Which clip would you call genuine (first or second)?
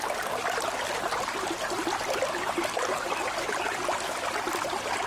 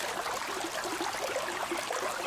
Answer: second